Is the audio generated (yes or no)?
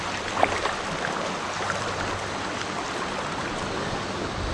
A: no